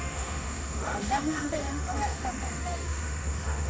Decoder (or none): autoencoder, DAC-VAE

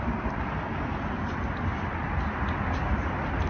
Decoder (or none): none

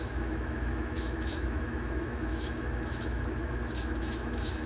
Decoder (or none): autoencoder, DAC-VAE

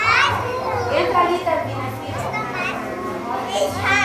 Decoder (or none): none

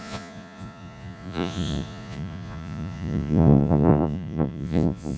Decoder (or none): vocoder, Vocos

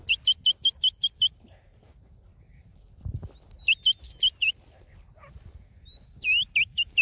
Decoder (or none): none